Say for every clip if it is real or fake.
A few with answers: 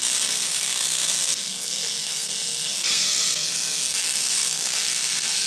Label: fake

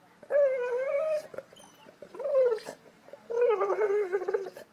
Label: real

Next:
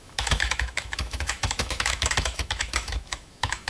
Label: fake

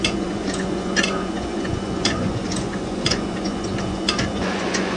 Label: fake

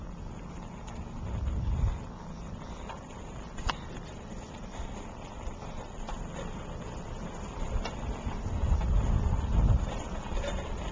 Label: real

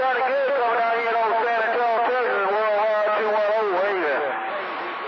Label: real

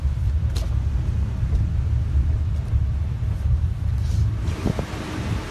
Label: real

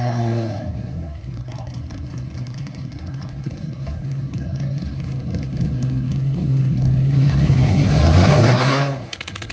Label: fake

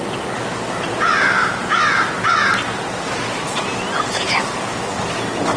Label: real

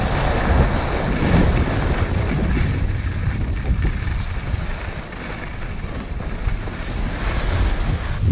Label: real